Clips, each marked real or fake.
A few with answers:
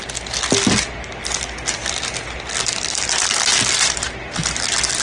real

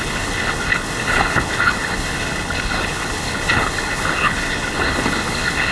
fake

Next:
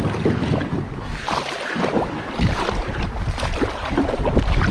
real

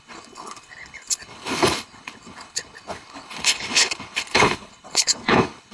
fake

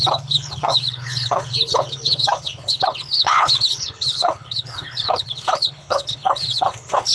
fake